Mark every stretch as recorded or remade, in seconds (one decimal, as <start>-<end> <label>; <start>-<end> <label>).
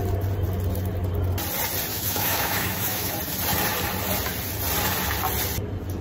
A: 0.0-1.9 recorded; 1.9-3.1 remade; 3.1-6.0 recorded